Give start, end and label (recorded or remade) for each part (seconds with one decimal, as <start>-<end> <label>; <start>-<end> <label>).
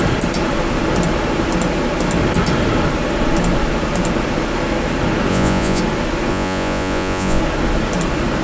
0.0-5.3 recorded; 5.3-5.8 remade; 5.8-6.3 recorded; 6.3-7.4 remade; 7.4-8.4 recorded